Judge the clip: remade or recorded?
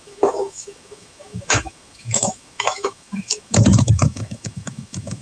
remade